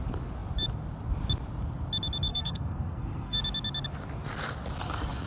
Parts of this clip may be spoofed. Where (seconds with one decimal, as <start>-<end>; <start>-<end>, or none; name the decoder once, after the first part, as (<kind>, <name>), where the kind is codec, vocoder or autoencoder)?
2.3-3.4 (codec, SNAC)

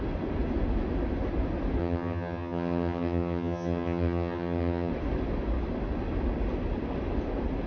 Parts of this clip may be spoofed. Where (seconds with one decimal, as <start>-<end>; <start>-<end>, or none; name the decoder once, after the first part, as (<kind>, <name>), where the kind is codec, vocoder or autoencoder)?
1.8-4.9 (vocoder, HiFi-GAN)